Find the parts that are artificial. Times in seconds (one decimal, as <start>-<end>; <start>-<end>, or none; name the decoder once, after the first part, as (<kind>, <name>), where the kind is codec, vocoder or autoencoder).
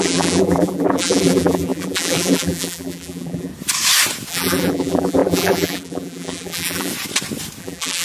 0.0-3.5 (vocoder, BigVGAN v2); 4.3-6.9; 7.6-8.0